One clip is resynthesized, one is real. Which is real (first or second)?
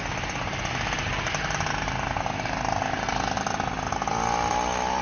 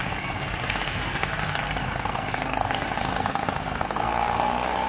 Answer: first